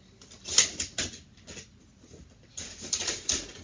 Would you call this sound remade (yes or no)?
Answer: no